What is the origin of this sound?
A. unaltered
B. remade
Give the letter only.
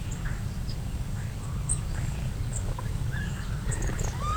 B